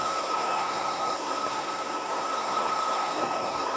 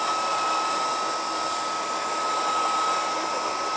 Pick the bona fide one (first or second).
second